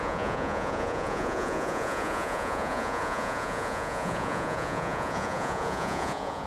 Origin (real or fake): fake